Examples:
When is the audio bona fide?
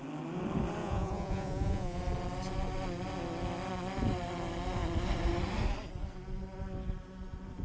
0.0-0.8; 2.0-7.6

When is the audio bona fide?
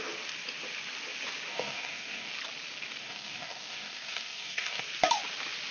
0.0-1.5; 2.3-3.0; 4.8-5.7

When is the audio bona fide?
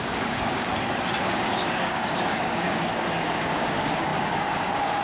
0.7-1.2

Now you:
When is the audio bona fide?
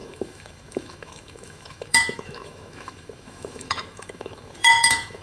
none